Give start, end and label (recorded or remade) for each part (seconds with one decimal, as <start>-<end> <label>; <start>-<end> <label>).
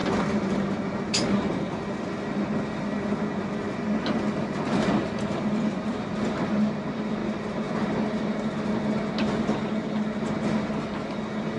0.0-11.6 recorded